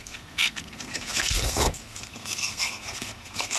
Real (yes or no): no